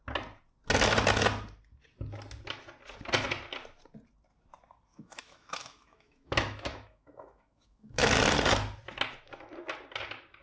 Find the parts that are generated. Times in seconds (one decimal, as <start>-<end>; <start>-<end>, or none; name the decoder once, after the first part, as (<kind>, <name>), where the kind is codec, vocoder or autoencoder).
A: 4.9-8.1 (autoencoder, DAC-VAE)